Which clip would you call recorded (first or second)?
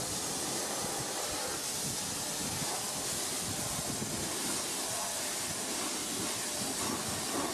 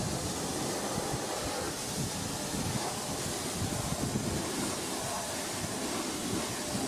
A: first